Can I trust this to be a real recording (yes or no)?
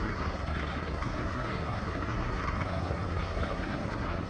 no